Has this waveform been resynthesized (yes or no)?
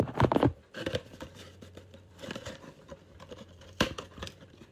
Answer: yes